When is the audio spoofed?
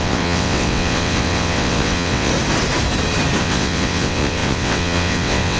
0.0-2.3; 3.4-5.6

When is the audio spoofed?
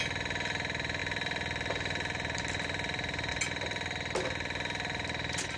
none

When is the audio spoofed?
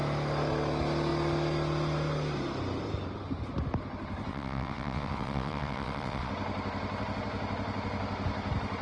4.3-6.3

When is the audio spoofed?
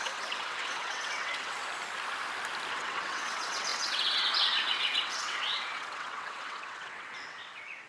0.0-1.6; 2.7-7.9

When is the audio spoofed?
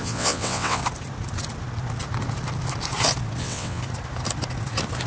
0.0-0.8; 3.4-3.8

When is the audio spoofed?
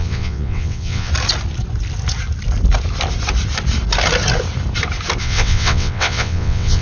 0.0-1.1; 5.2-6.8